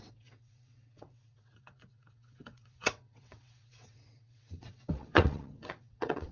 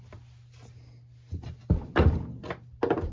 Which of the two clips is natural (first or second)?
second